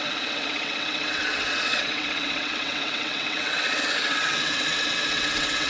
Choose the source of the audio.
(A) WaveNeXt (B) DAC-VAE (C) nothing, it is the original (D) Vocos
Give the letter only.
A